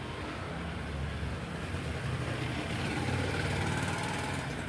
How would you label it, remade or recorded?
recorded